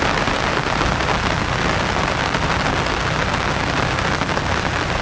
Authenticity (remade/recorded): recorded